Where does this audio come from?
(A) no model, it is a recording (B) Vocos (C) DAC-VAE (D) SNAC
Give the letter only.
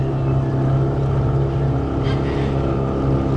A